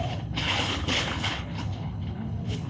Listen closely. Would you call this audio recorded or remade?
remade